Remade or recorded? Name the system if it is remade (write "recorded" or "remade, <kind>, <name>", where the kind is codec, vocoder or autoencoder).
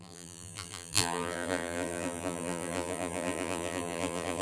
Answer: remade, vocoder, BigVGAN v2